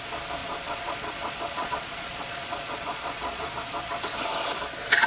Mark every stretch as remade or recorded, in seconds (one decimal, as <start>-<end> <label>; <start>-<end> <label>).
0.0-0.4 recorded; 0.4-3.5 remade; 3.5-5.1 recorded